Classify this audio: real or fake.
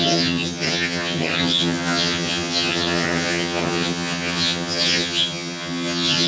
fake